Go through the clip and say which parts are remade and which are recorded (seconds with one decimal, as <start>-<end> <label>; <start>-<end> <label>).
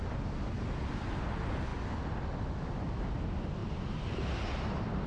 0.0-5.1 recorded